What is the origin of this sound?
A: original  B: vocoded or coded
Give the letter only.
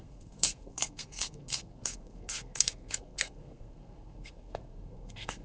B